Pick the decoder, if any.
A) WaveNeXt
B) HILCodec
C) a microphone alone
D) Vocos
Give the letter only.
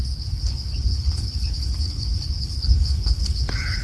B